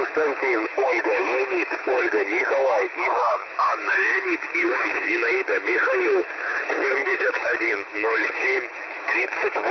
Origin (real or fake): fake